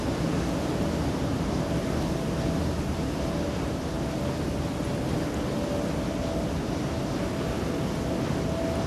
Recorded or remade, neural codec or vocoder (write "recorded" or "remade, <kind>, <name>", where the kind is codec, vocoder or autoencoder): recorded